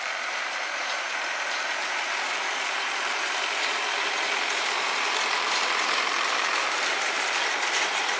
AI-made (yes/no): yes